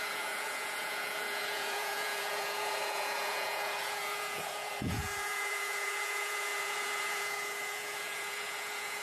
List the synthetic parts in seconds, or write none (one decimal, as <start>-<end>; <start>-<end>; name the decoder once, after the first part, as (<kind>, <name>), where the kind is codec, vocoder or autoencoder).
0.0-9.0 (vocoder, Vocos)